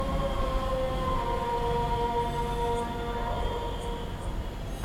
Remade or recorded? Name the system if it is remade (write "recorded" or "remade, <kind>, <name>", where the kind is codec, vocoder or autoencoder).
recorded